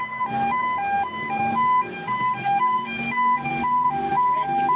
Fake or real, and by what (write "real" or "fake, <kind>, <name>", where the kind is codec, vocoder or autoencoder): real